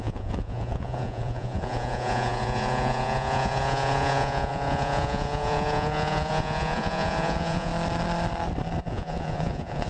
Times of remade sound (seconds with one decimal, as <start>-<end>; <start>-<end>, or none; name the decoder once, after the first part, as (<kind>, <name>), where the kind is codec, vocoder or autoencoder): 0.0-7.7 (vocoder, Vocos); 8.8-9.9